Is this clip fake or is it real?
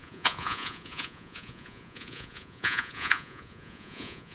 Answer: fake